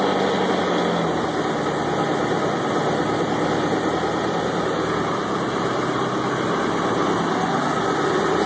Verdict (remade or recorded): recorded